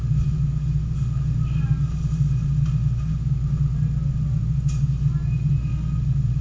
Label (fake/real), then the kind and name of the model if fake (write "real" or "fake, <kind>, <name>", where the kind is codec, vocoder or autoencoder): real